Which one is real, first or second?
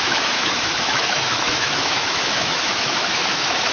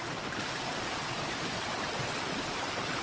second